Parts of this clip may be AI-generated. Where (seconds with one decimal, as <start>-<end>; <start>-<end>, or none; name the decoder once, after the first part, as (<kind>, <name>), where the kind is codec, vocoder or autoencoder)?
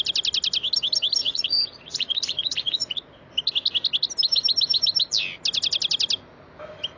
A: 1.2-3.3 (vocoder, Vocos)